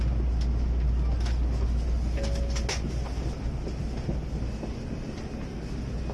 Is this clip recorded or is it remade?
recorded